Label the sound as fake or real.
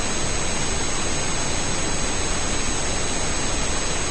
real